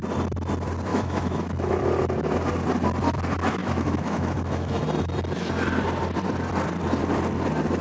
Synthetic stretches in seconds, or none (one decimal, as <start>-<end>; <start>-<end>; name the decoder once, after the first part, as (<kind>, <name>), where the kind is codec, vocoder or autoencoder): 0.9-1.8 (autoencoder, DAC-VAE); 3.6-4.8